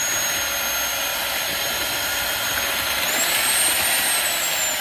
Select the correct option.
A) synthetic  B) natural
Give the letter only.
B